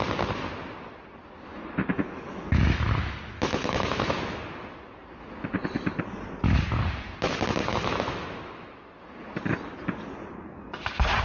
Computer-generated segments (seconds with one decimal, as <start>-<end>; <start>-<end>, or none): 1.5-4.4; 7.7-9.2